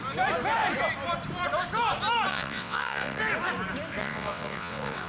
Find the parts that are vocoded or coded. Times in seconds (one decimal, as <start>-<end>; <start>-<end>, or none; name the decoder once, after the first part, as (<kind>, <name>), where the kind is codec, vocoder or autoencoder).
2.3-3.2 (vocoder, WaveNeXt); 4.0-5.1